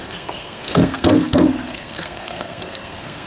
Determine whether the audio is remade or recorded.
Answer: remade